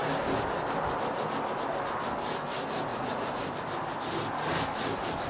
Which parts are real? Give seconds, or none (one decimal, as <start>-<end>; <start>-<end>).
0.0-2.9; 3.5-5.3